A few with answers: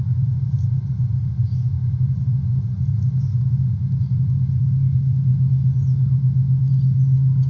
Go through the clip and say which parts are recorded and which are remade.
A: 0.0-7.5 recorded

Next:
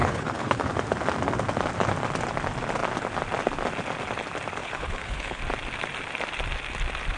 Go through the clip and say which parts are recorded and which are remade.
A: 0.0-0.7 remade; 0.7-4.6 recorded; 4.6-5.4 remade; 5.4-7.2 recorded

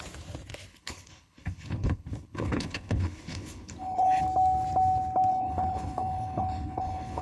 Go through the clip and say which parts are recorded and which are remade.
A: 0.0-0.7 recorded; 0.7-4.2 remade; 4.2-5.3 recorded; 5.3-7.2 remade

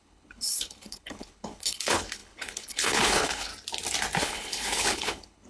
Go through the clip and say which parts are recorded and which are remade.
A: 0.0-3.5 remade; 3.5-4.2 recorded; 4.2-5.5 remade

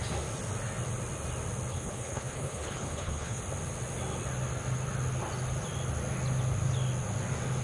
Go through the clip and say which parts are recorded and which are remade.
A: 0.0-1.7 recorded; 1.7-3.4 remade; 3.4-7.6 recorded

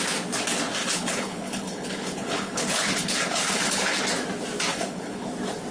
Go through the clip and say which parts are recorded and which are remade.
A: 0.0-0.8 recorded; 0.8-4.0 remade; 4.0-4.7 recorded; 4.7-5.3 remade; 5.3-5.7 recorded

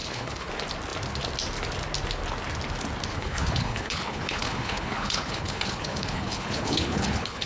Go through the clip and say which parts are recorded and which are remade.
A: 0.0-0.5 remade; 0.5-3.1 recorded; 3.1-7.5 remade